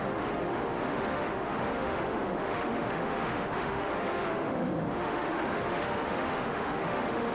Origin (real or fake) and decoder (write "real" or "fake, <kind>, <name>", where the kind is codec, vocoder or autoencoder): fake, autoencoder, DAC-VAE